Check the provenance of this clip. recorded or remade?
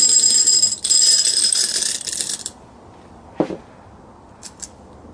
remade